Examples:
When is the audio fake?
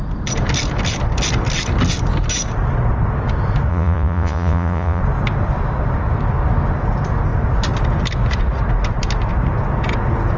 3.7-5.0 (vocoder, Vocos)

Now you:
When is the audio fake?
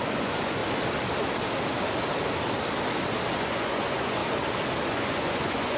0.0-0.6 (vocoder, Vocos); 3.3-4.2; 4.9-5.8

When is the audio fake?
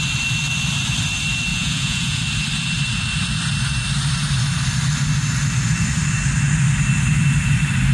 1.5-2.2 (vocoder, Vocos)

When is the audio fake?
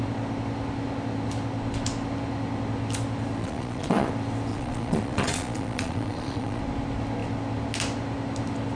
3.4-4.1 (vocoder, Vocos); 4.5-6.6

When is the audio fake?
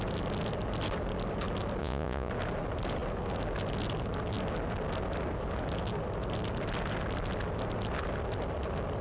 1.8-2.3 (vocoder, Vocos)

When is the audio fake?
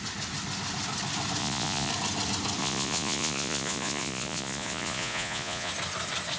1.4-1.9 (vocoder, Vocos); 2.6-5.7